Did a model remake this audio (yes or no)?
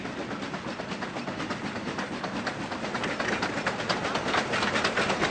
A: no